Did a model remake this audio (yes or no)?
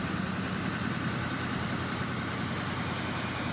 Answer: no